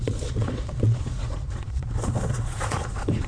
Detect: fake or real fake